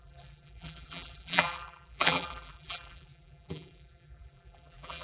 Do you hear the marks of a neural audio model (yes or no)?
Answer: yes